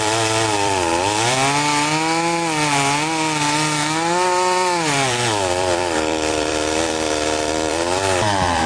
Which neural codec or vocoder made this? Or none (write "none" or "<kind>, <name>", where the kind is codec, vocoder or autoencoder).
vocoder, BigVGAN v2